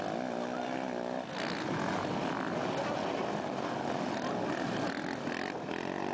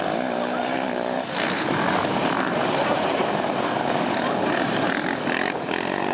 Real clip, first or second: first